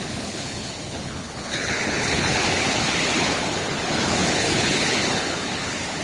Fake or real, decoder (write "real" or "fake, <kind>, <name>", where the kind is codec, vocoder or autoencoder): fake, codec, HILCodec